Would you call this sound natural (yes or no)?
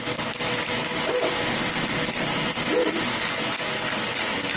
yes